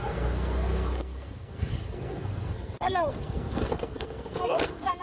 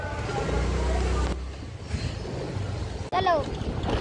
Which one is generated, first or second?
first